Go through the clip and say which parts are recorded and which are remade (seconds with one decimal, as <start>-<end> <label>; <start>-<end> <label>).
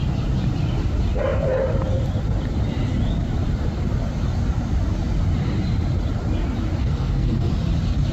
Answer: 0.0-6.8 recorded; 6.8-7.5 remade; 7.5-8.1 recorded